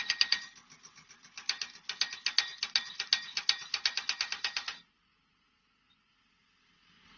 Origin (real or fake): real